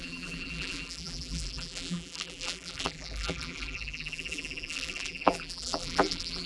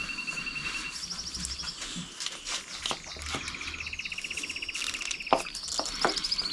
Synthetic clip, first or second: first